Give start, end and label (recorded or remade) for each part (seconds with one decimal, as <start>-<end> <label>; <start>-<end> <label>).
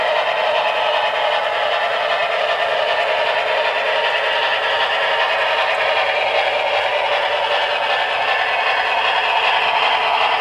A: 0.0-10.4 recorded